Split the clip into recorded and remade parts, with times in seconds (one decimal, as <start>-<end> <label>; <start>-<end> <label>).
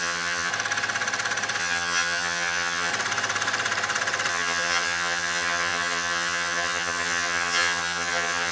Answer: 0.0-0.5 remade; 0.5-1.6 recorded; 1.6-2.9 remade; 2.9-4.3 recorded; 4.3-8.5 remade